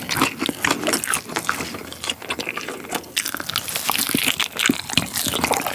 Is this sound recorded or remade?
recorded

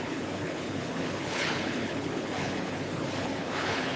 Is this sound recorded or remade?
remade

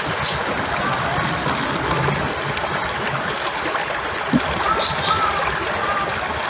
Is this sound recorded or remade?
recorded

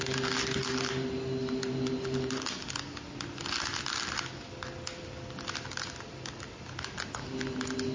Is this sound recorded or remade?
recorded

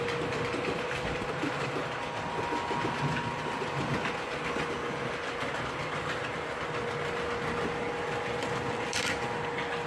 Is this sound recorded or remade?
recorded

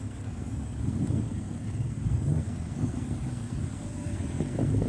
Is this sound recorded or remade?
remade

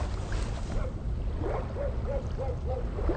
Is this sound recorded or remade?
recorded